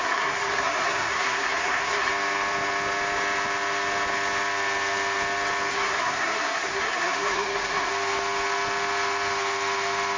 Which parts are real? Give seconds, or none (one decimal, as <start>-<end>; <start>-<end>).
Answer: 2.1-5.7; 7.9-10.2